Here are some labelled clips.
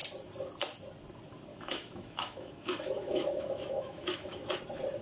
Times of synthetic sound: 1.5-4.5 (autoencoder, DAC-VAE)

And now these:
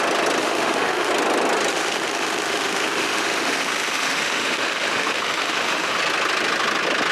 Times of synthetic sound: 0.4-1.1 (autoencoder, DAC-VAE); 1.7-6.0